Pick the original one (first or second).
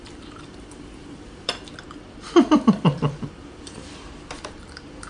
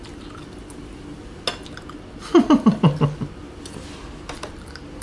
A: second